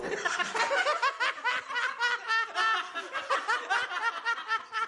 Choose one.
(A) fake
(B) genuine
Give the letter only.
B